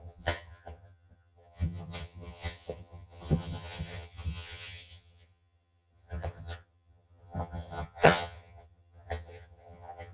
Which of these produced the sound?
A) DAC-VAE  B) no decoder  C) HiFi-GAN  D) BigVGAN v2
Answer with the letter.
C